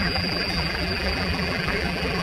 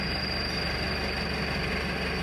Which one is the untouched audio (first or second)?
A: second